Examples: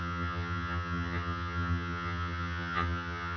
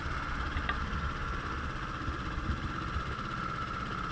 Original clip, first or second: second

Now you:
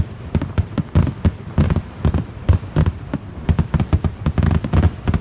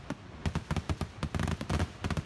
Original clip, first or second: second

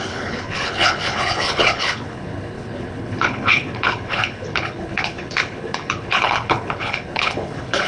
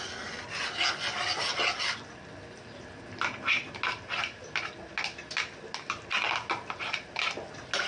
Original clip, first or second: second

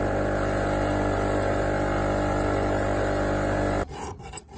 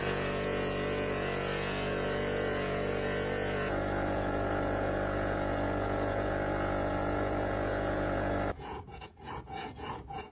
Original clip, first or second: first